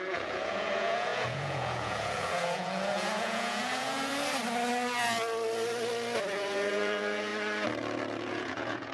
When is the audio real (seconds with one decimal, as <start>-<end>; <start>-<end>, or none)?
4.1-6.3; 7.3-8.3